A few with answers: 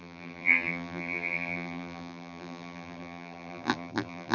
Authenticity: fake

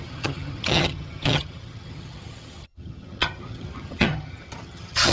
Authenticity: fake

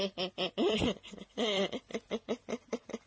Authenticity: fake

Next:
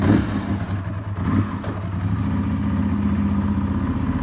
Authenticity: real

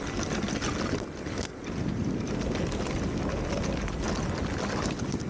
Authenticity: real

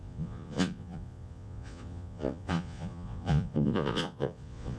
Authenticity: fake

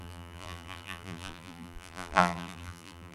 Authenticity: fake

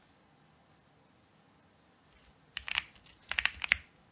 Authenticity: real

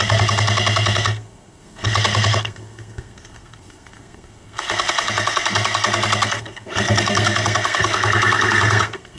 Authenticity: fake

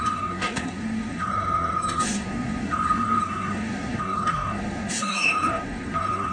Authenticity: fake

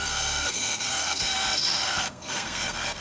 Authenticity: fake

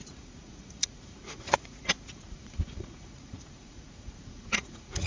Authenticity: fake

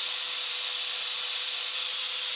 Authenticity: real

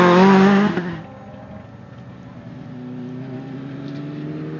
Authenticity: real